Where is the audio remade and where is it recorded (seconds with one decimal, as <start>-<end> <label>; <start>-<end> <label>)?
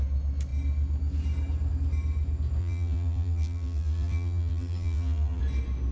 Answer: 0.0-2.6 recorded; 2.6-5.4 remade; 5.4-5.9 recorded